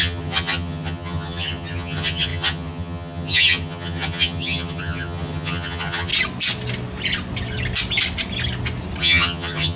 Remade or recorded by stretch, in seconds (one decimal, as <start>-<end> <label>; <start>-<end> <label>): 0.0-6.1 remade; 6.1-9.0 recorded; 9.0-9.8 remade